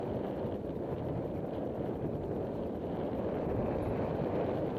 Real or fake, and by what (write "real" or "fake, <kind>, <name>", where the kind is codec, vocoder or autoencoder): fake, vocoder, BigVGAN v2